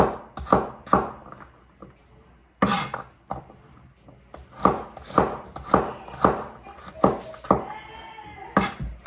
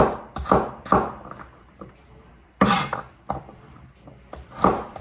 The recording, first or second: first